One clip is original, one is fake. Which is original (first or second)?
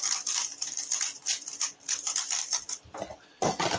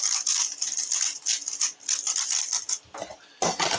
second